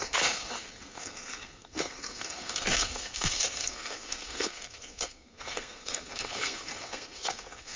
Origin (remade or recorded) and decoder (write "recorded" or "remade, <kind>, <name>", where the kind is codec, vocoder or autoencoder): remade, codec, SNAC